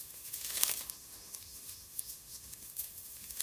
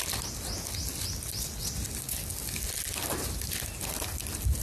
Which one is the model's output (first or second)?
first